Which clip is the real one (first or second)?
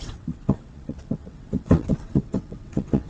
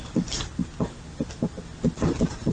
second